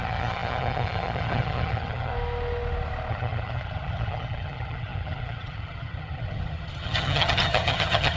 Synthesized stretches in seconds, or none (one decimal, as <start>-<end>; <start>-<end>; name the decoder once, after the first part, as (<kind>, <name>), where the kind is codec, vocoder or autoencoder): 0.0-2.1 (vocoder, HiFi-GAN); 3.1-8.2

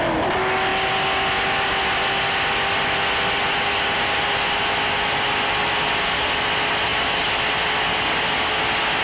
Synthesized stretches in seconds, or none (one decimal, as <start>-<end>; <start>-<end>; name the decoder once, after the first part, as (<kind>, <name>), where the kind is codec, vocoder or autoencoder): none